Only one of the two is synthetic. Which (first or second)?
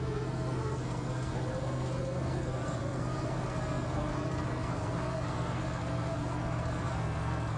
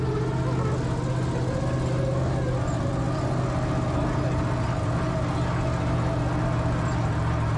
first